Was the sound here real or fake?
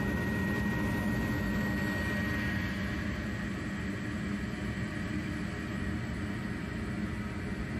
real